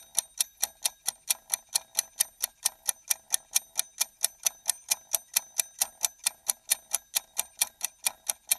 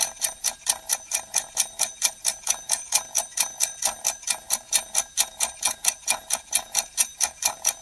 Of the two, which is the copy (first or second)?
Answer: second